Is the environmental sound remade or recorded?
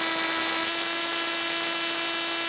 recorded